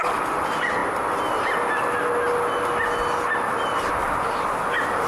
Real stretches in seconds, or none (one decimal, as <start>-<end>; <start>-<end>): 0.0-5.1